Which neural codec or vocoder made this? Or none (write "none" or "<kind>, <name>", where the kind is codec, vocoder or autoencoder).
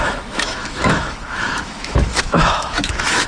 autoencoder, DAC-VAE